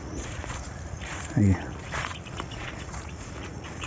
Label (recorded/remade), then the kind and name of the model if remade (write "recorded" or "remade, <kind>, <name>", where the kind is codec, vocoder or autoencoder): remade, vocoder, Vocos